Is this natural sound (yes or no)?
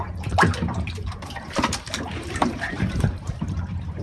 no